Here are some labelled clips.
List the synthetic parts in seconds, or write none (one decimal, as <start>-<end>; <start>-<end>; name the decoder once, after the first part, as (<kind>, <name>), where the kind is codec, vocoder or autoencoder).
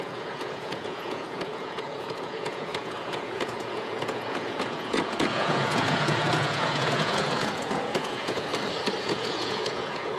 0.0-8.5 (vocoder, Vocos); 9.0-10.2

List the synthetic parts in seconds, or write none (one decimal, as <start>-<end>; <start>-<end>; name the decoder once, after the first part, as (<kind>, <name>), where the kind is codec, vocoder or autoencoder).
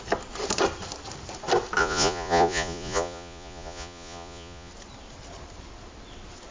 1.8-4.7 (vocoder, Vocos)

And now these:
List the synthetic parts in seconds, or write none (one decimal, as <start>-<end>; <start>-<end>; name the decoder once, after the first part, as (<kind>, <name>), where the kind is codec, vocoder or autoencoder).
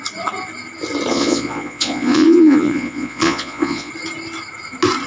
1.1-3.9 (vocoder, Vocos)